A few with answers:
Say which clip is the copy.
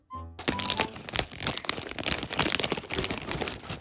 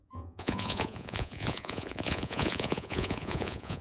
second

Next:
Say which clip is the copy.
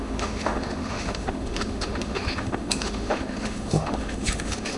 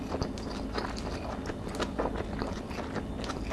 first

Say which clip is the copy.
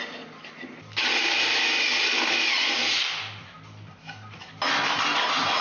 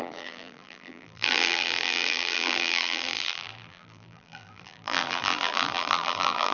second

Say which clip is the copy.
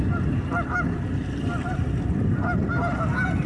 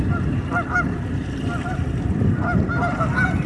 second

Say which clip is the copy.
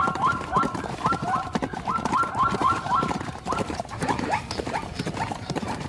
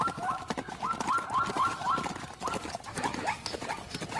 first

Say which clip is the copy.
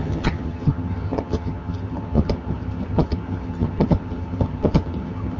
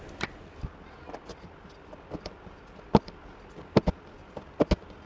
first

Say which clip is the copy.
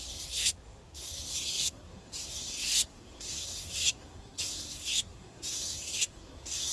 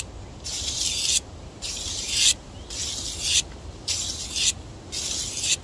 first